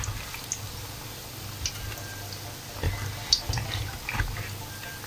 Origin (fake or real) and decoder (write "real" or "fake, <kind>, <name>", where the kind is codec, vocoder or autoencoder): real